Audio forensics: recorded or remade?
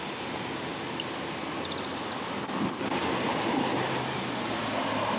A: recorded